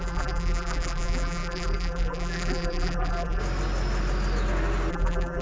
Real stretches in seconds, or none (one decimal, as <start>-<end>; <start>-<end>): 3.4-4.9